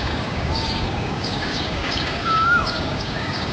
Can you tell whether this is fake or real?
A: fake